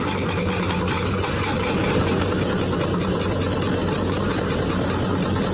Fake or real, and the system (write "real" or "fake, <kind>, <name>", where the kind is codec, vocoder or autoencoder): real